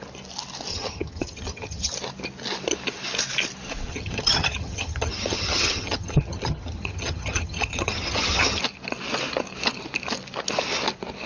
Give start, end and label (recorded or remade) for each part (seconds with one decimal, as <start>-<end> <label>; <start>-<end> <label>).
0.0-0.7 recorded; 0.7-1.9 remade; 1.9-3.9 recorded; 3.9-8.6 remade; 8.6-11.3 recorded